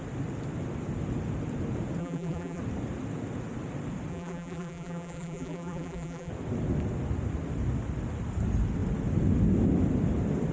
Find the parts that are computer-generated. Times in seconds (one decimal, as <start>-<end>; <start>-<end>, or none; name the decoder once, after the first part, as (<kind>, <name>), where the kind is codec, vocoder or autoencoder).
2.0-2.6 (vocoder, BigVGAN v2); 4.1-6.3